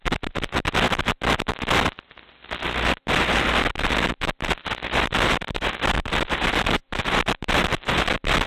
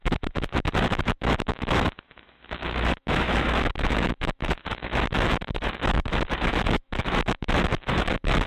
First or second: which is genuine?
first